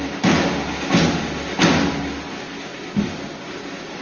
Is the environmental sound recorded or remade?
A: recorded